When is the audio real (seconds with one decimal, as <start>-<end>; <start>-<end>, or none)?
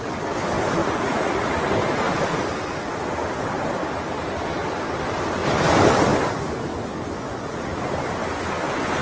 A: 0.0-0.8; 1.6-7.3; 8.0-9.0